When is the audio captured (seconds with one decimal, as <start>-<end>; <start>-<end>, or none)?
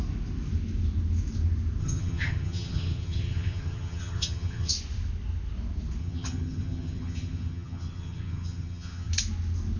0.0-1.8; 4.7-6.0; 9.1-9.8